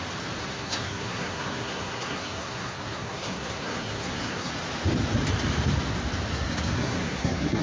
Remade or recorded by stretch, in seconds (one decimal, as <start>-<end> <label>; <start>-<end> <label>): 0.0-0.4 recorded; 0.4-4.5 remade; 4.5-6.3 recorded; 6.3-7.6 remade